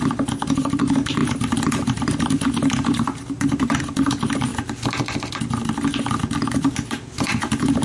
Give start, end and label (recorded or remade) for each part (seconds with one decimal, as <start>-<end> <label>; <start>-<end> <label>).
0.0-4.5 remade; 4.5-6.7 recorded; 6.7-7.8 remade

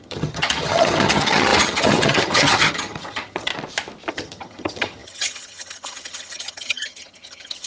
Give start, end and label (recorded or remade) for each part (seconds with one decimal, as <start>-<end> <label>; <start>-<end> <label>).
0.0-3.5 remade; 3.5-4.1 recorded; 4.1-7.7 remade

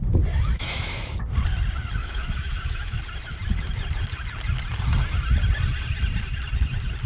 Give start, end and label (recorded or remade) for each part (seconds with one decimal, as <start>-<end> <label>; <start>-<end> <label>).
0.0-0.5 recorded; 0.5-1.2 remade; 1.2-2.0 recorded; 2.0-3.0 remade; 3.0-7.1 recorded

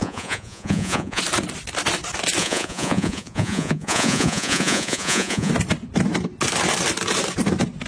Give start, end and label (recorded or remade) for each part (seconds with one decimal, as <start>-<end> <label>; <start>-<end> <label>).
0.0-1.2 remade; 1.2-2.4 recorded; 2.4-5.5 remade; 5.5-7.9 recorded

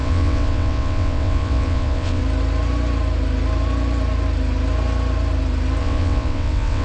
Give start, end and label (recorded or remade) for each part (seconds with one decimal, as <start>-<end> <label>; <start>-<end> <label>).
0.0-2.2 remade; 2.2-5.8 recorded; 5.8-6.8 remade

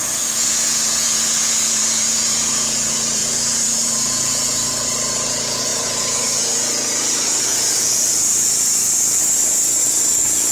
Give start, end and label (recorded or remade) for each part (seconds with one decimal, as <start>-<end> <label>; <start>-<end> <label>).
0.0-10.5 remade